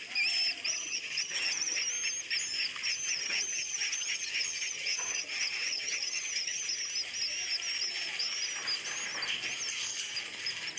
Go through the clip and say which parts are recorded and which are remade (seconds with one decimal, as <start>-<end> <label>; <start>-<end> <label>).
0.0-0.7 recorded; 0.7-1.8 remade; 1.8-2.9 recorded; 2.9-6.7 remade; 6.7-10.8 recorded